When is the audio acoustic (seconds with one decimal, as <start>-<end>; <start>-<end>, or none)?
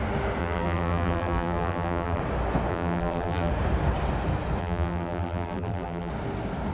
0.0-0.4; 2.2-2.7; 3.5-4.6; 6.1-6.7